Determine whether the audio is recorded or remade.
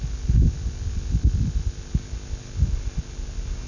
recorded